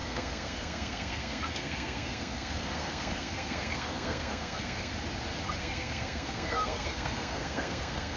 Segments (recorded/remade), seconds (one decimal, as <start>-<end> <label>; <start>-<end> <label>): 0.0-4.9 remade; 4.9-5.6 recorded; 5.6-8.2 remade